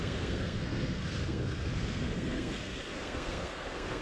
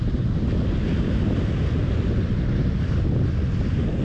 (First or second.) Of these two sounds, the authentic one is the second